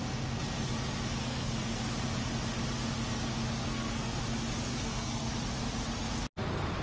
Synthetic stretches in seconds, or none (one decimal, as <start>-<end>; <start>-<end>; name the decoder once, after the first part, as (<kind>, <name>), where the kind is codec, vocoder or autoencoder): 1.2-1.8 (codec, SNAC); 3.6-4.2; 4.7-5.3